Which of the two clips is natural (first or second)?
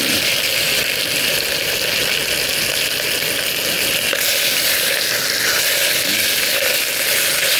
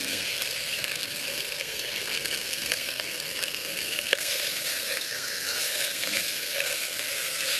first